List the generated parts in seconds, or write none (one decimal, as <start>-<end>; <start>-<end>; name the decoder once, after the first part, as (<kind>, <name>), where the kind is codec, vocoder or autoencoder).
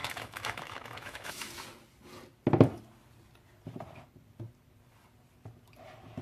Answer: 0.0-1.5 (autoencoder, DAC-VAE)